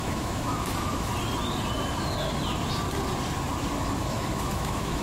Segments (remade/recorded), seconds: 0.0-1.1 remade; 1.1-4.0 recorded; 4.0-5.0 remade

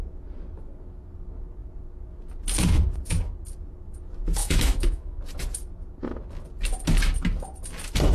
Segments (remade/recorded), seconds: 0.0-4.4 recorded; 4.4-5.2 remade; 5.2-8.1 recorded

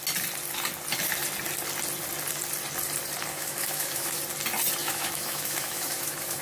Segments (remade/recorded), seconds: 0.0-3.3 recorded; 3.3-4.2 remade; 4.2-4.8 recorded; 4.8-6.4 remade

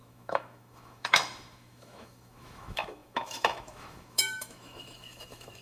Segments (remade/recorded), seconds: 0.0-5.6 remade

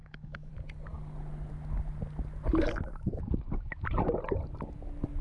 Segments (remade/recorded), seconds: 0.0-0.5 remade; 0.5-5.2 recorded

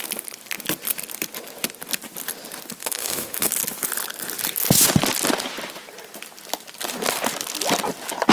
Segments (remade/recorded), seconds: 0.0-2.8 recorded; 2.8-3.5 remade; 3.5-8.3 recorded